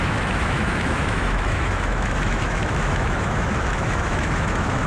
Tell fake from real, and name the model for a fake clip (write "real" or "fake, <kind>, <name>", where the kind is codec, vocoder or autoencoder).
fake, autoencoder, DAC-VAE